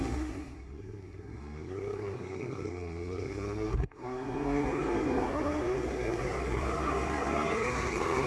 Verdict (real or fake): fake